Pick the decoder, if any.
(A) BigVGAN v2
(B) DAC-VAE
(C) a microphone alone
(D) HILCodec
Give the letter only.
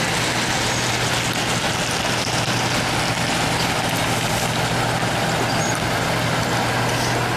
C